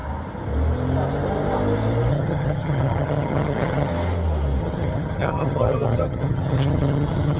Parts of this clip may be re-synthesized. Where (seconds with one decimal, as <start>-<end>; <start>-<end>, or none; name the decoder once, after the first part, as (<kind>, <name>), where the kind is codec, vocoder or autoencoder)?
2.1-3.9 (vocoder, HiFi-GAN); 4.6-7.4